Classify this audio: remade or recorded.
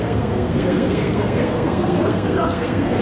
remade